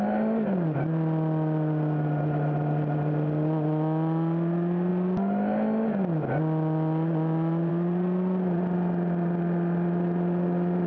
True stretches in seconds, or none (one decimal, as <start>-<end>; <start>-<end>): 0.0-10.9